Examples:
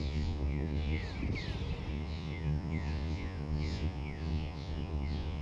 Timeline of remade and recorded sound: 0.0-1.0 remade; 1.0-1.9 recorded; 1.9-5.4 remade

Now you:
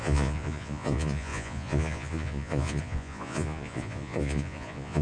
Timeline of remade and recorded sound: 0.0-5.0 remade